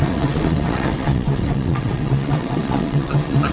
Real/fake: fake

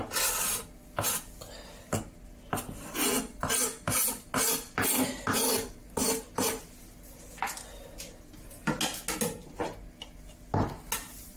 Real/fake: real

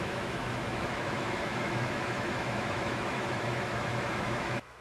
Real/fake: fake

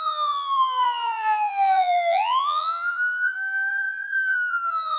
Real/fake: fake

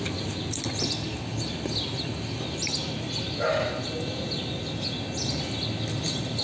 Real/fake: real